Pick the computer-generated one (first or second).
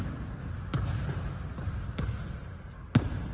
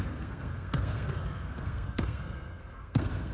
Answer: second